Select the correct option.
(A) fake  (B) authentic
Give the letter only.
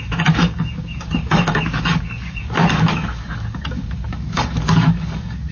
A